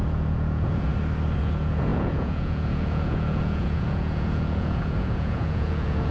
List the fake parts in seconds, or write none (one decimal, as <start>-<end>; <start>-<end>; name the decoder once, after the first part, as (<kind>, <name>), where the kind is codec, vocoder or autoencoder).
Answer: 0.0-0.9 (vocoder, Vocos); 1.4-6.1